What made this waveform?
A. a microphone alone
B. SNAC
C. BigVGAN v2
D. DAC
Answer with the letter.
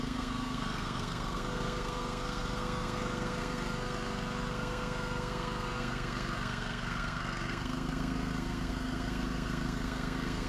B